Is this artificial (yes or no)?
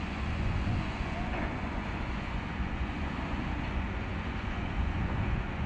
yes